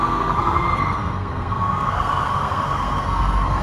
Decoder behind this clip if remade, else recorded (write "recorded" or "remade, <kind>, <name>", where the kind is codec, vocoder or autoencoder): remade, codec, SNAC